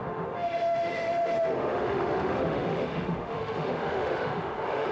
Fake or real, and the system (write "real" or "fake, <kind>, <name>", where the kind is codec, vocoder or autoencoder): fake, autoencoder, DAC-VAE